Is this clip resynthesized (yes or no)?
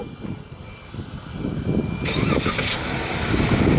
no